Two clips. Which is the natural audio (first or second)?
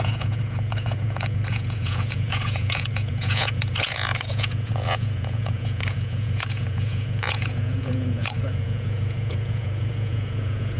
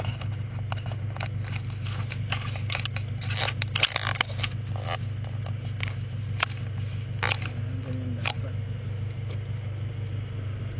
second